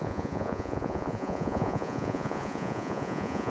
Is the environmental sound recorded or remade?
remade